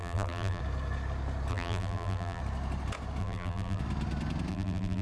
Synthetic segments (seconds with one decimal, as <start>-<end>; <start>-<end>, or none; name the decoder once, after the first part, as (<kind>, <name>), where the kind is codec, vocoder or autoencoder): 0.0-0.6 (vocoder, BigVGAN v2); 1.5-2.4; 3.2-3.8; 4.5-5.0